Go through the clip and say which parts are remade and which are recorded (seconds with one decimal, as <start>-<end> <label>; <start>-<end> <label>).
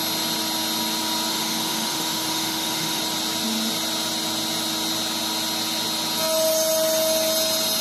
0.0-1.3 recorded; 1.3-3.0 remade; 3.0-7.8 recorded